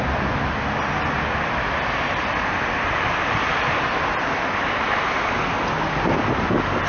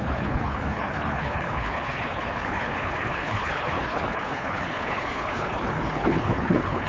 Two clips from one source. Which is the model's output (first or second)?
second